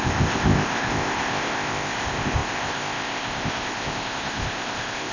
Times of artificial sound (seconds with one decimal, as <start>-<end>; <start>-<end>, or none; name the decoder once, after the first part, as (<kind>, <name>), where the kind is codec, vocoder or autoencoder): 0.0-5.1 (codec, ZipCodec)